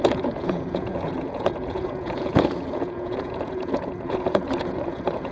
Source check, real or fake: fake